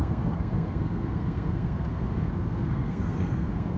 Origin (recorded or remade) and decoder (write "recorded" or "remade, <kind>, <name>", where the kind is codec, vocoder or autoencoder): remade, codec, SNAC